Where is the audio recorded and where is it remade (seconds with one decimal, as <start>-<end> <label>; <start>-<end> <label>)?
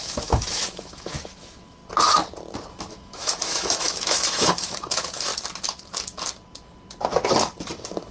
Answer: 0.0-1.8 remade; 1.8-2.9 recorded; 2.9-5.3 remade; 5.3-8.1 recorded